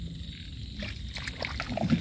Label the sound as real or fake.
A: real